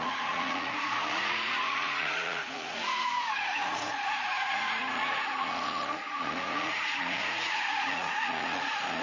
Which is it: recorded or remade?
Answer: remade